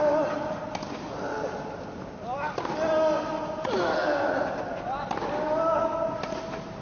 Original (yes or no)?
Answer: yes